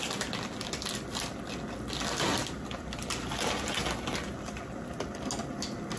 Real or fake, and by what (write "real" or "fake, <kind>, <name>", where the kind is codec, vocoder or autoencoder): real